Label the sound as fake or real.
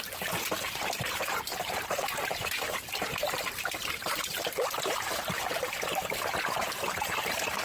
fake